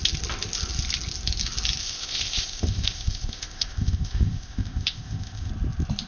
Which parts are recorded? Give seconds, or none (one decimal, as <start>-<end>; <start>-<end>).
0.0-1.8; 5.5-6.1